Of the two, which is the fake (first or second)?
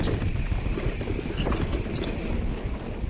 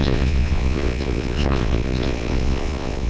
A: second